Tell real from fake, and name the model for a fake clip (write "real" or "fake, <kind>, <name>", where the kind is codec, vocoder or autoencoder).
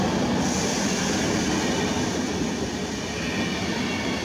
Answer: real